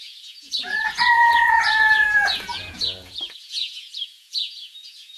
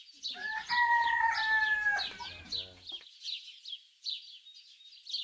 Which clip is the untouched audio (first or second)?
second